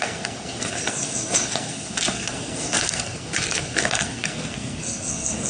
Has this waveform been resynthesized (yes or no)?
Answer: yes